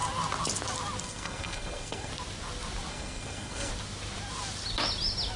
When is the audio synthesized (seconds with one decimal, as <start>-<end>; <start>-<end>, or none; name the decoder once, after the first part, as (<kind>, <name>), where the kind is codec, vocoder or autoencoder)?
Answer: 1.0-2.1 (codec, SNAC); 2.9-3.7